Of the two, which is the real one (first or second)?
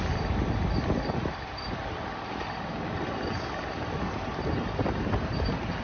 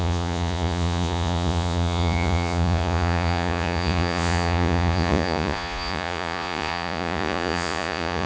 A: first